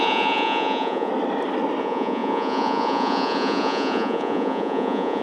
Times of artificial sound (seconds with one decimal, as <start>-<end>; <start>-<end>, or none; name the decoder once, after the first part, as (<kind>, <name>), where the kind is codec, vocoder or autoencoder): 0.0-1.1 (vocoder, Vocos); 1.8-5.2